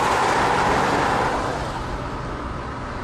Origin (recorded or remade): recorded